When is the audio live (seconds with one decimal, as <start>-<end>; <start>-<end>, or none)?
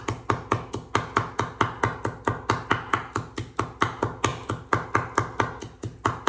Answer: 0.0-6.3